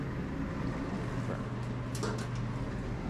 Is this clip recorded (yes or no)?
yes